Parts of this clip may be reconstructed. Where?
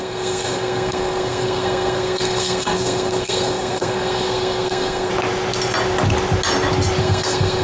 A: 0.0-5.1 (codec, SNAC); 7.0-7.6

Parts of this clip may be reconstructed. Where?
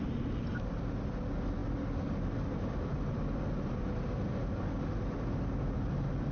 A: none